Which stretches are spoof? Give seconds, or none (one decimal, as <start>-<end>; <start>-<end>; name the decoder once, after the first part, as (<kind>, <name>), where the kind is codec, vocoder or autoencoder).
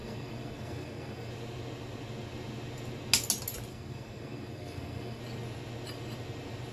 0.0-1.3 (codec, SNAC); 3.7-5.2